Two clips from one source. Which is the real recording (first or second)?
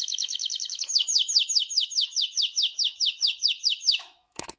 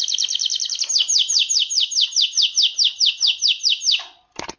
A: second